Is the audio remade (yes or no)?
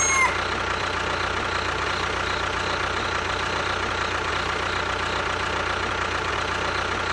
no